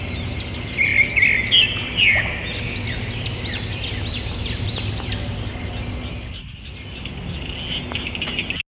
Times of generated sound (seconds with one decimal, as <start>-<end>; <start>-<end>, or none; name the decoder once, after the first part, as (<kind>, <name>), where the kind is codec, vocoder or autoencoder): none